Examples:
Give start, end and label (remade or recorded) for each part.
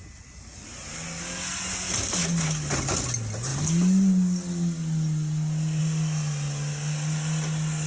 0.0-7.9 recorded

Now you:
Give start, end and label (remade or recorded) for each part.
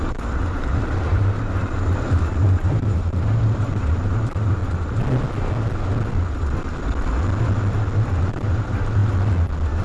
0.0-4.6 remade; 4.6-8.2 recorded; 8.2-9.0 remade; 9.0-9.8 recorded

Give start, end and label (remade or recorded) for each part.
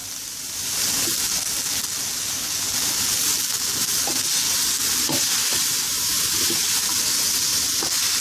0.0-0.9 remade; 0.9-4.8 recorded; 4.8-6.8 remade; 6.8-8.2 recorded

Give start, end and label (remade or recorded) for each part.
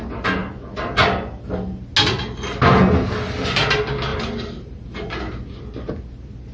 0.0-4.1 recorded; 4.1-5.2 remade; 5.2-6.5 recorded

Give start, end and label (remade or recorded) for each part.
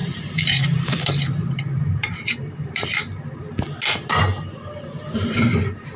0.0-3.0 remade; 3.0-5.1 recorded; 5.1-6.0 remade